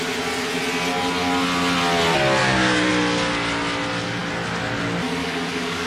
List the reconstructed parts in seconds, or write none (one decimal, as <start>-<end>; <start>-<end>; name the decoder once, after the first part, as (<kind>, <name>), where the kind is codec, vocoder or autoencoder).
2.4-2.9 (codec, DAC); 5.2-5.9

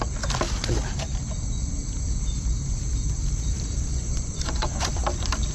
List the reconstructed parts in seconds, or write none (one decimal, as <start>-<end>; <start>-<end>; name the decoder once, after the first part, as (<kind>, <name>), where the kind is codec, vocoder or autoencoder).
3.9-4.9 (vocoder, Vocos)

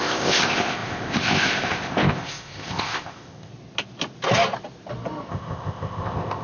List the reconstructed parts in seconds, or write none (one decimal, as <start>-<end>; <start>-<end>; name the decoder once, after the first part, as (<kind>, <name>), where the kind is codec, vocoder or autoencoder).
0.0-3.5 (codec, ZipCodec); 5.3-6.4

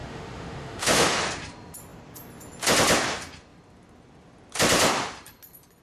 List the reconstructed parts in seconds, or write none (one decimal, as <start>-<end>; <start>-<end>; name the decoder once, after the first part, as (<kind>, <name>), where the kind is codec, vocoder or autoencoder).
0.0-1.2 (autoencoder, DAC-VAE)

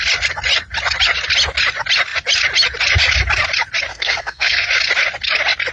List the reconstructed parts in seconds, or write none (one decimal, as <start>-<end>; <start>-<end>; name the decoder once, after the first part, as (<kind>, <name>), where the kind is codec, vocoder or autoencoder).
3.9-4.7 (codec, SNAC)

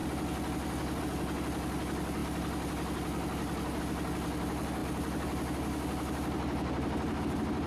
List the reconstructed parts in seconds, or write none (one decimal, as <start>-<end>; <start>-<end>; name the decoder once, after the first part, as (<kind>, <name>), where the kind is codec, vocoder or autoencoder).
none

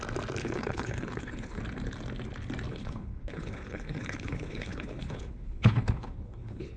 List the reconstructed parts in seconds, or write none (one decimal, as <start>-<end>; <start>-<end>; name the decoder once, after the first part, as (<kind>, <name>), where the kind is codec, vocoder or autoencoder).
0.4-1.6 (codec, HILCodec); 2.7-6.8